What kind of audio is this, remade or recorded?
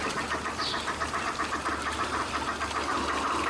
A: recorded